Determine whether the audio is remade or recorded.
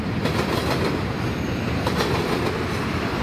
recorded